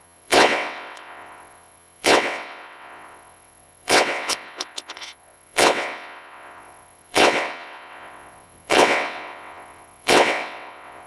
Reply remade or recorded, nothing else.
remade